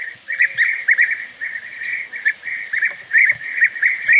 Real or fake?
real